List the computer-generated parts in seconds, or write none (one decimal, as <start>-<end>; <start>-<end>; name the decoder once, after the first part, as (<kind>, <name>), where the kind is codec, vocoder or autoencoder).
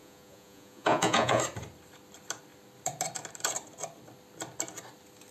0.0-1.4 (vocoder, Vocos)